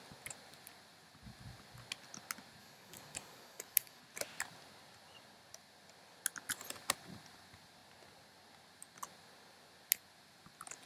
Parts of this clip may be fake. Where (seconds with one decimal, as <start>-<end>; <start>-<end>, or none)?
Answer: 2.6-4.0